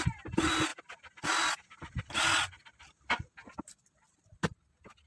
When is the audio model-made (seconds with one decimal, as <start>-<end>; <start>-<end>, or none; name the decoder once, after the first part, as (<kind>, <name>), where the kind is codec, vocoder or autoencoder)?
none